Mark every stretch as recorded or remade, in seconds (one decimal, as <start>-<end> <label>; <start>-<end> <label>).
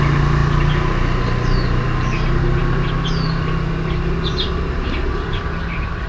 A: 0.0-6.1 recorded